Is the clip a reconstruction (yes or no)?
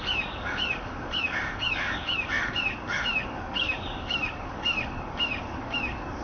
yes